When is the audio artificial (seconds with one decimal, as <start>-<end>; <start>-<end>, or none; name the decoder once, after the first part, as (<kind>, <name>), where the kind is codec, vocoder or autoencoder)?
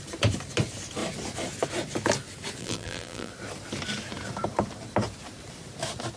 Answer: 2.6-3.3 (vocoder, BigVGAN v2)